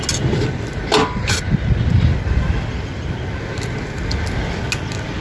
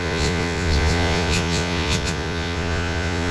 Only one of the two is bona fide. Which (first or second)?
first